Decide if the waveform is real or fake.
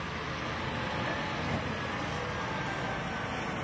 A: real